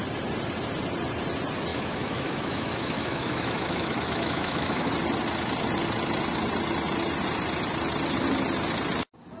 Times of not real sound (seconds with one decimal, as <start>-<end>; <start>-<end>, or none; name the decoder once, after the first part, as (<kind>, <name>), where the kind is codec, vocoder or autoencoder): 1.7-4.9 (autoencoder, DAC-VAE)

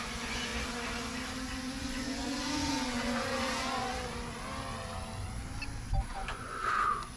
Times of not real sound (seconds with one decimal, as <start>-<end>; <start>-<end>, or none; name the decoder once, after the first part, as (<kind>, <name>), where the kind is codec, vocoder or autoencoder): 0.0-0.5 (vocoder, Vocos); 1.8-3.9; 6.1-7.2

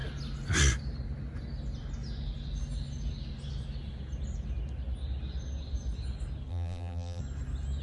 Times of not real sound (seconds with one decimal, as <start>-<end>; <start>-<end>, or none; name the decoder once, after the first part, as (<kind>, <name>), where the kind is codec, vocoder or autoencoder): 6.5-7.2 (vocoder, BigVGAN v2)

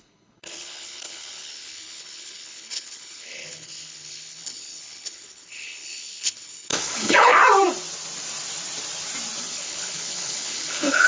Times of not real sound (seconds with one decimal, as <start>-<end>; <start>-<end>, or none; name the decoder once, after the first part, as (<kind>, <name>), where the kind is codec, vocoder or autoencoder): 0.0-7.3 (codec, HILCodec); 9.4-11.1

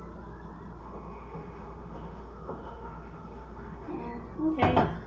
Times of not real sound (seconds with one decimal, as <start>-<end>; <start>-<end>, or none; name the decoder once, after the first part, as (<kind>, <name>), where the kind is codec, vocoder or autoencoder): 0.8-3.9 (autoencoder, DAC-VAE)

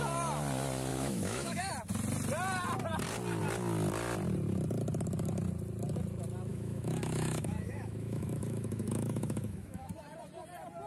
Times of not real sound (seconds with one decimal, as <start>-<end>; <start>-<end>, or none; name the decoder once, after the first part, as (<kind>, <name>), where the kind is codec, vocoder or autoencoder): 0.9-1.7 (autoencoder, DAC-VAE); 6.5-9.9

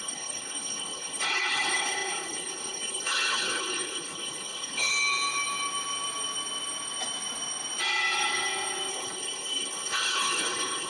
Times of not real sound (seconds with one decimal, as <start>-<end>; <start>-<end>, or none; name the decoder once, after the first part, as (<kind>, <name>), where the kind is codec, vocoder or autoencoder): 0.0-4.9 (codec, HILCodec); 8.9-10.9